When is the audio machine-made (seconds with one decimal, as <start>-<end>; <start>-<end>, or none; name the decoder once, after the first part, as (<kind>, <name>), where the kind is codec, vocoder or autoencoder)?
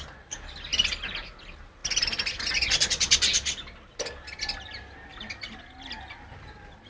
none